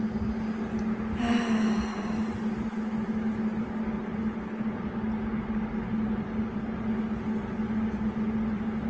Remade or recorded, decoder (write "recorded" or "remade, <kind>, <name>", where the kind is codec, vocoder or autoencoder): recorded